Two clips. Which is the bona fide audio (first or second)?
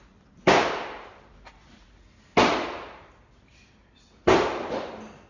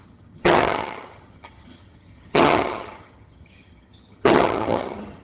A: first